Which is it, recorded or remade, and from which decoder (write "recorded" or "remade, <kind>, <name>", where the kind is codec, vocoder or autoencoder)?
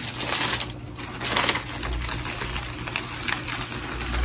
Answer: recorded